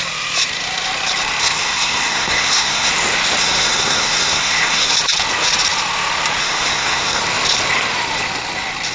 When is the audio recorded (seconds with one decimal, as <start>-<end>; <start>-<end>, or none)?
0.0-1.4; 2.9-3.4; 4.9-6.4; 7.2-8.9

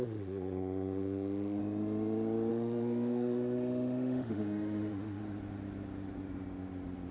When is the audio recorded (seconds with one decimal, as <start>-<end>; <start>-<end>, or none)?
1.6-2.5; 5.2-7.1

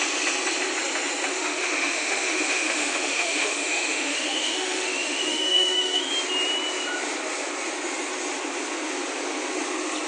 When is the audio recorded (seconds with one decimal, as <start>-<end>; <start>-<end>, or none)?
0.0-1.3; 6.1-10.1

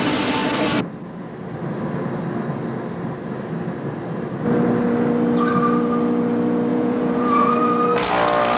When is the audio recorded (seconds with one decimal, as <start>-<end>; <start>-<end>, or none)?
0.0-6.7; 7.5-8.6

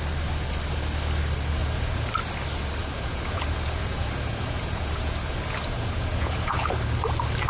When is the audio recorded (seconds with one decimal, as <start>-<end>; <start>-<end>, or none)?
0.0-1.6; 2.1-2.8; 6.6-7.5

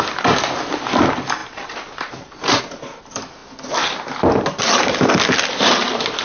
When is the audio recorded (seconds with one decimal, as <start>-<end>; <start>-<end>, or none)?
0.0-1.4; 2.6-6.2